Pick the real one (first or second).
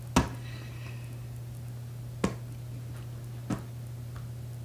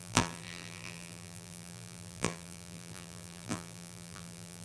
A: first